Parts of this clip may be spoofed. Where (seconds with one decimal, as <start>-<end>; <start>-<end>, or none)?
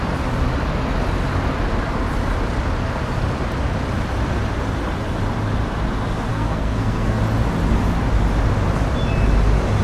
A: 6.3-7.2